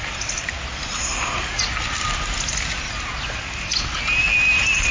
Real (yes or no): yes